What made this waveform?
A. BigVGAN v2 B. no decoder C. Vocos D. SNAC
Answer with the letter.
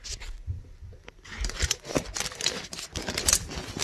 B